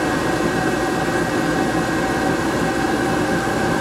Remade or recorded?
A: recorded